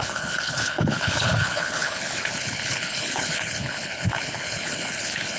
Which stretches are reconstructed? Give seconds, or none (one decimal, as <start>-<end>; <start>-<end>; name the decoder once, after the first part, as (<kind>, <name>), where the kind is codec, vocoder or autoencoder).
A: 0.0-5.4 (codec, HILCodec)